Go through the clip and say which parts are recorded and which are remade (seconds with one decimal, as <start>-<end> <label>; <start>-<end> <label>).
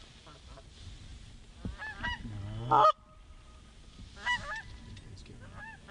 0.0-5.9 recorded